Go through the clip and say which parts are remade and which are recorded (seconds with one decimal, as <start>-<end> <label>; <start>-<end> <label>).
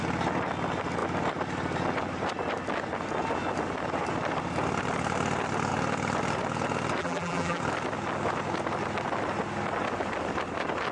0.0-7.0 recorded; 7.0-7.6 remade; 7.6-10.9 recorded